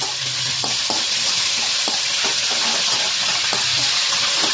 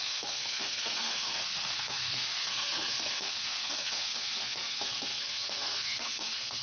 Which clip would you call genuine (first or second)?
first